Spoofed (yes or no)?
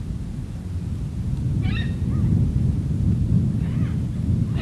no